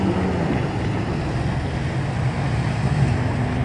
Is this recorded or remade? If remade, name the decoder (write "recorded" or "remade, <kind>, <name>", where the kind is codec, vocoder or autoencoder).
recorded